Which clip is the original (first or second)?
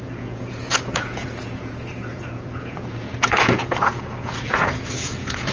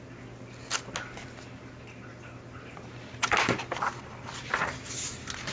second